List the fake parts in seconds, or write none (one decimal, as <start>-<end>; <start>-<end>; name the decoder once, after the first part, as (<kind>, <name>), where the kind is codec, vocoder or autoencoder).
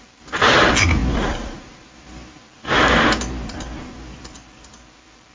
none